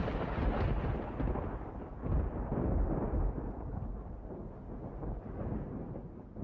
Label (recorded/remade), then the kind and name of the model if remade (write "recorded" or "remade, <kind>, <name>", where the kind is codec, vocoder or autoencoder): recorded